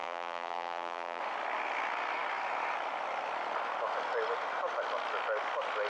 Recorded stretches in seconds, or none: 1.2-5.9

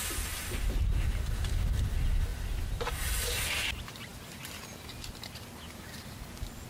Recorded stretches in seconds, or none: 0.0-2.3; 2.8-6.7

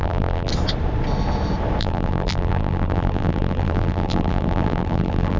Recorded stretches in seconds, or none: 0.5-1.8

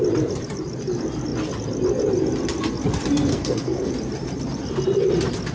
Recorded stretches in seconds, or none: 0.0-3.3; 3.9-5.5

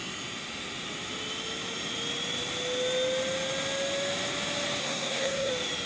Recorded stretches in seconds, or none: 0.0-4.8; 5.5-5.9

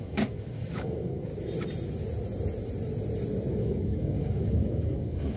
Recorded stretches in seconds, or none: 1.3-3.5

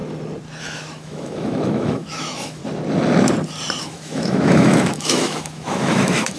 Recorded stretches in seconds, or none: 0.0-0.6; 2.6-3.8